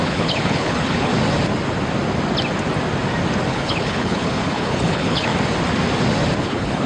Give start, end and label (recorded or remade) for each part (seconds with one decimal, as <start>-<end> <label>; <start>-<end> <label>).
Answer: 0.0-1.1 remade; 1.1-3.5 recorded; 3.5-5.3 remade; 5.3-6.4 recorded; 6.4-6.9 remade